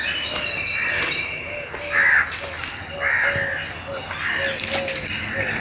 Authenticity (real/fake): real